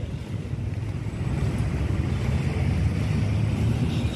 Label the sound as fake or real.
real